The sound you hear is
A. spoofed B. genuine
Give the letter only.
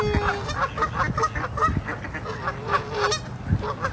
B